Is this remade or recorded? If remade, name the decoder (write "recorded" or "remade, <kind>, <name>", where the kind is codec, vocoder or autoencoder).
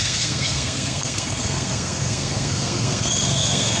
remade, codec, SNAC